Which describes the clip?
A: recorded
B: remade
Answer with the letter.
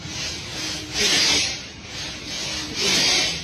A